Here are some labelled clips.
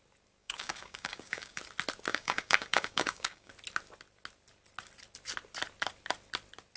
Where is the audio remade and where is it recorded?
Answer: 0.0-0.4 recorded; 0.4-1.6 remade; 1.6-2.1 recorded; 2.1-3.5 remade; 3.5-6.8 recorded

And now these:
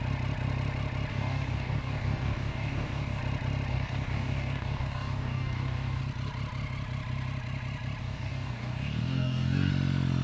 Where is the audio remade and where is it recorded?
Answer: 0.0-1.1 recorded; 1.1-3.2 remade; 3.2-3.7 recorded; 3.7-6.0 remade; 6.0-8.0 recorded; 8.0-9.7 remade; 9.7-10.2 recorded